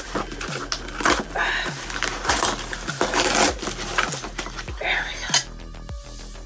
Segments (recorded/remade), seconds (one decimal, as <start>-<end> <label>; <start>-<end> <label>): 0.0-6.5 recorded